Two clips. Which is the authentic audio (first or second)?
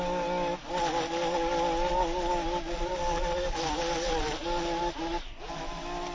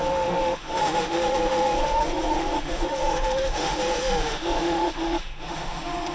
first